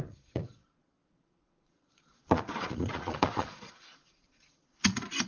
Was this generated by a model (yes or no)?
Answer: yes